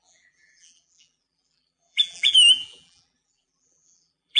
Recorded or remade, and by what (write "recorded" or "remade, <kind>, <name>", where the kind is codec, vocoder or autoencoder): remade, vocoder, BigVGAN v2